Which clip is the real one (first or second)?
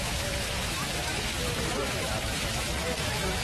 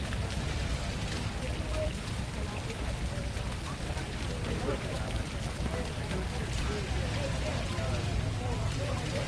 second